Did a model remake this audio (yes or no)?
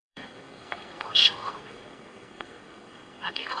yes